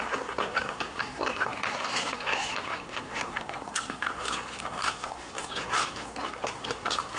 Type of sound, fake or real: fake